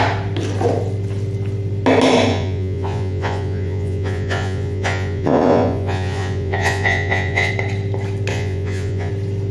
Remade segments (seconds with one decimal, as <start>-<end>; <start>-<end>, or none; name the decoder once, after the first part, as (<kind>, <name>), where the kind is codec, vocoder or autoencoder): 2.3-7.5 (vocoder, Vocos); 8.3-9.1